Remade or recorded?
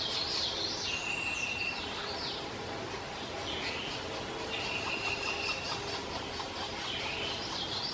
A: recorded